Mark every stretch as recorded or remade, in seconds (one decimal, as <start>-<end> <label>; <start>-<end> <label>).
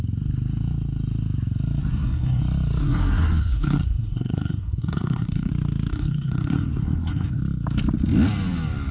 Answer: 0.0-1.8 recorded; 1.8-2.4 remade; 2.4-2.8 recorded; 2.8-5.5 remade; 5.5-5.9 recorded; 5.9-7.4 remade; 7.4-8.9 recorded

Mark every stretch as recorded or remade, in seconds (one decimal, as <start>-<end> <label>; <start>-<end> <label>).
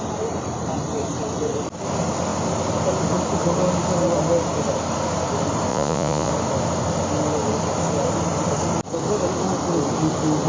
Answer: 0.0-5.7 recorded; 5.7-6.3 remade; 6.3-10.5 recorded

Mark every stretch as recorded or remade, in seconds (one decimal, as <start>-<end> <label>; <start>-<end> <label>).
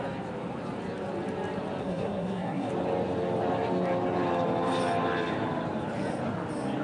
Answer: 0.0-1.8 recorded; 1.8-2.7 remade; 2.7-6.8 recorded